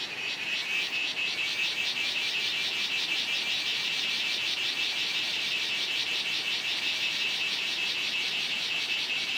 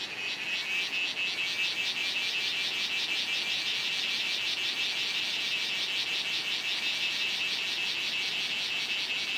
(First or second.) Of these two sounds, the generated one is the first